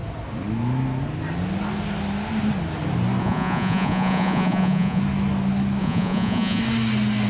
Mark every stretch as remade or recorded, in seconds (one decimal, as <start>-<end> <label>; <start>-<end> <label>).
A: 0.0-3.2 recorded; 3.2-5.0 remade; 5.0-5.8 recorded; 5.8-6.6 remade; 6.6-7.3 recorded